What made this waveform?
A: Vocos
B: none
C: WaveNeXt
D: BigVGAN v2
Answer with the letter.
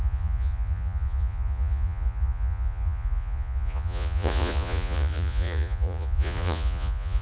A